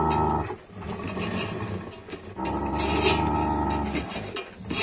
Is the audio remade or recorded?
recorded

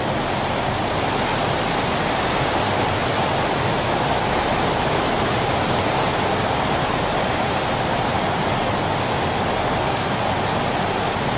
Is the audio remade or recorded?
recorded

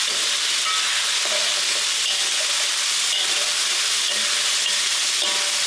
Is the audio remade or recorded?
recorded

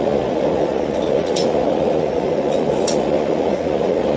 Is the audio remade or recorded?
remade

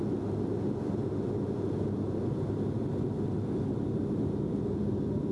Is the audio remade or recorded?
recorded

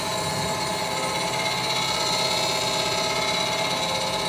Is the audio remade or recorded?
recorded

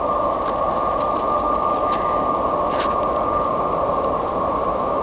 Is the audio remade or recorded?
recorded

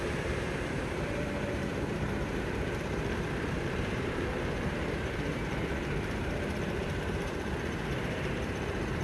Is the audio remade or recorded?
remade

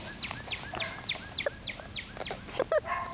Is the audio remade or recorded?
recorded